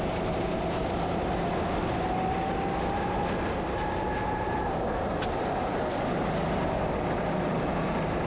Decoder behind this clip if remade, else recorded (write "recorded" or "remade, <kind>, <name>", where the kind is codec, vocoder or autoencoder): recorded